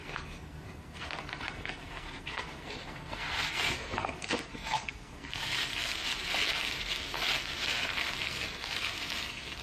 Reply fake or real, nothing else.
fake